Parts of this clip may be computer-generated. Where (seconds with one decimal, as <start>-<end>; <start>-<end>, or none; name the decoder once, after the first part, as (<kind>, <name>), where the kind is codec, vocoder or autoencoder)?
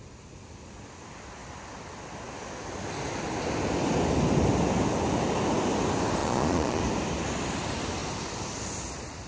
6.2-6.8 (vocoder, Vocos)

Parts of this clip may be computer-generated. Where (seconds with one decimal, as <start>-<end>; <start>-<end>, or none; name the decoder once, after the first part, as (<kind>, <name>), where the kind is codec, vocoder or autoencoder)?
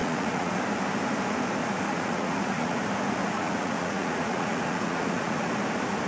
0.0-0.6 (vocoder, Vocos); 1.6-2.8; 3.2-5.5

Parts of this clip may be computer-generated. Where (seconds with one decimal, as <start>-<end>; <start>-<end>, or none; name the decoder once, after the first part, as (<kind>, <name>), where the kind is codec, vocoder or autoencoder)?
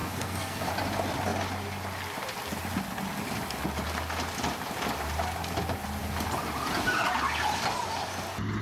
0.0-0.7 (codec, SNAC)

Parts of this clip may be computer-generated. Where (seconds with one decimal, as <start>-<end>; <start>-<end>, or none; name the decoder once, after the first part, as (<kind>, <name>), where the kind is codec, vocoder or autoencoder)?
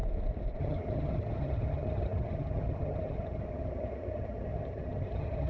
0.6-5.5 (vocoder, HiFi-GAN)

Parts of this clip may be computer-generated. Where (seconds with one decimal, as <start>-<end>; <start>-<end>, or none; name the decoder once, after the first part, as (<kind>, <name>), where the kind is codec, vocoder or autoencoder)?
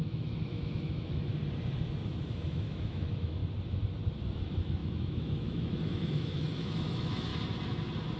0.0-1.3 (autoencoder, DAC-VAE); 2.3-3.4; 4.3-7.3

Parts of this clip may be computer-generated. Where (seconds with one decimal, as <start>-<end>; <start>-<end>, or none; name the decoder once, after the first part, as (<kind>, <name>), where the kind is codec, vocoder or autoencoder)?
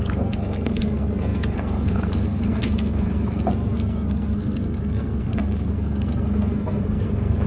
0.0-7.5 (codec, SNAC)